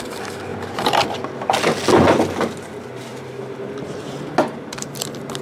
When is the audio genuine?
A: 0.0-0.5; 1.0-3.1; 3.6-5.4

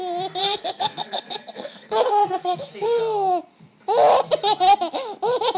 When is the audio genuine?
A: 0.0-0.4; 3.0-5.6

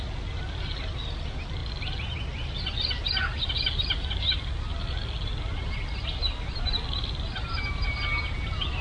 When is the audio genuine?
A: 0.0-8.8

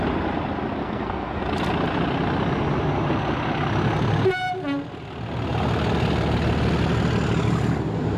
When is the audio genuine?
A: 0.0-0.8; 1.4-8.2

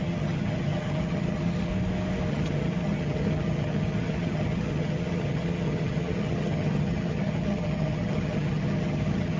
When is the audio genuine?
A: 1.7-2.3

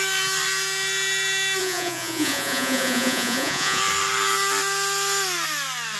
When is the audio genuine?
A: 0.0-1.6; 3.8-6.0

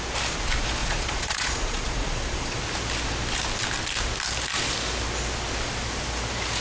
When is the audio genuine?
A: 0.0-0.8; 2.6-6.6

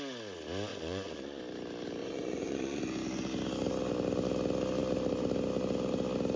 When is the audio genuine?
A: 0.0-0.7; 1.4-2.0; 2.8-6.4